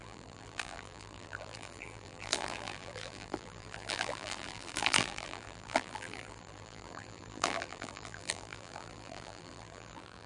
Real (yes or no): no